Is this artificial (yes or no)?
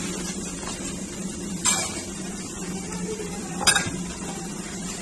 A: yes